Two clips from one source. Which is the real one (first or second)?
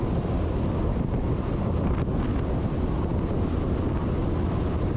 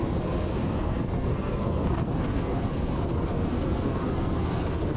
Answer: first